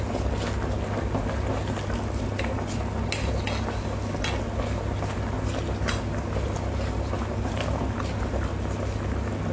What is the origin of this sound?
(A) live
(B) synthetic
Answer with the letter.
A